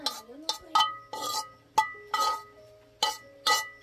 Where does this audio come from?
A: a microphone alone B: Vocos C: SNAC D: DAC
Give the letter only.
A